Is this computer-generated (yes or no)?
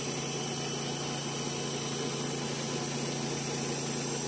no